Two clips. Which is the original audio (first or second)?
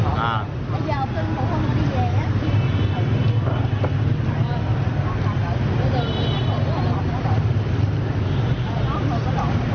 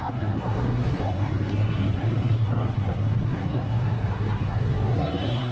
first